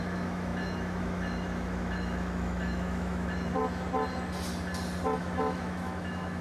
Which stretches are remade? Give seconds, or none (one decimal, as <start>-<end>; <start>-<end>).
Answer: 0.0-3.6; 5.2-6.4